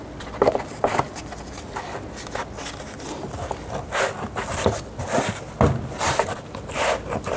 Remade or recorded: recorded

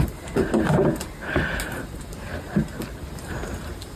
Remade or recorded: recorded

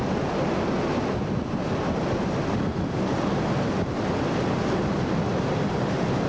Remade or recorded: recorded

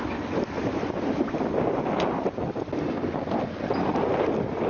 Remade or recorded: recorded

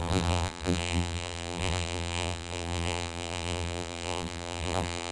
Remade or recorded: remade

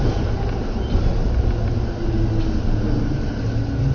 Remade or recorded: recorded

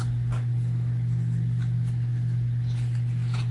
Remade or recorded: recorded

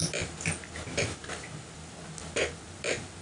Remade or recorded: recorded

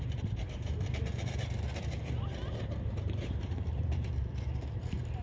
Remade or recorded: remade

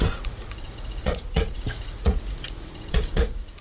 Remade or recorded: remade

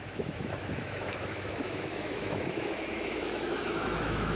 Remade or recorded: remade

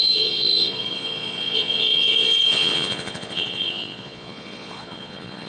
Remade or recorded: remade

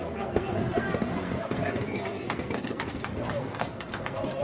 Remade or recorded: remade